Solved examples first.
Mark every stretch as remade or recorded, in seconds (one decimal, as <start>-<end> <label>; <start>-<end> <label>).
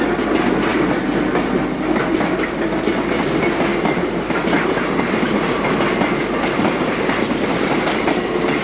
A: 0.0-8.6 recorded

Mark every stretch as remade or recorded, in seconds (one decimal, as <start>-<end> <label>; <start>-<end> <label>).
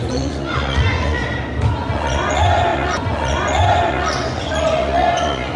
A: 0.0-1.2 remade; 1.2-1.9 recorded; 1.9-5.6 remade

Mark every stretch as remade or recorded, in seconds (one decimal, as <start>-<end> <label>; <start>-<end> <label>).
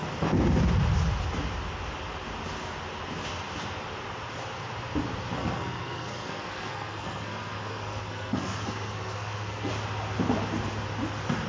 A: 0.0-5.4 recorded; 5.4-9.7 remade; 9.7-11.5 recorded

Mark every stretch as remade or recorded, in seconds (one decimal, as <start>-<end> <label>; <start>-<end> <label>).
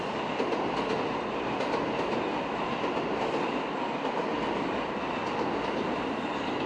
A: 0.0-6.7 recorded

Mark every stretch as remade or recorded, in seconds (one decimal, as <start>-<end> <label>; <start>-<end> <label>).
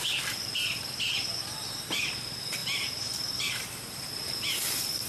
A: 0.0-5.1 remade